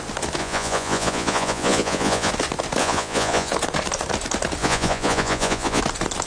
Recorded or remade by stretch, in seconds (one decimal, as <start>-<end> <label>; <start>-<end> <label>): 0.0-0.4 recorded; 0.4-2.3 remade; 2.3-2.8 recorded; 2.8-3.5 remade; 3.5-4.6 recorded; 4.6-5.8 remade; 5.8-6.3 recorded